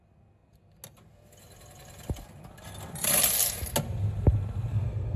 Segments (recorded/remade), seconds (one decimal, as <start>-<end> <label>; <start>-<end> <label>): 0.0-4.7 recorded; 4.7-5.2 remade